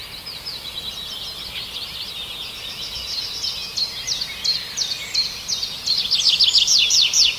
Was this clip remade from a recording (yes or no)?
no